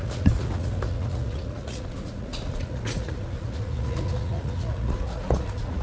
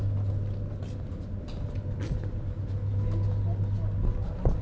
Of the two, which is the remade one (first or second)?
first